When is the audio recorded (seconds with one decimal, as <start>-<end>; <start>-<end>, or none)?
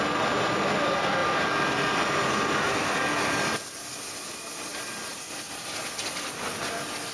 0.0-4.7; 5.7-7.1